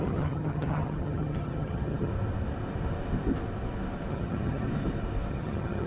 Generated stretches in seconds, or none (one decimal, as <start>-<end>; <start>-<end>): 0.0-2.1; 4.1-4.7; 5.3-5.9